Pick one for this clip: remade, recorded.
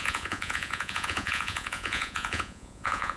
remade